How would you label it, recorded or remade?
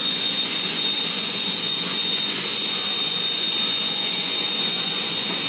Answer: remade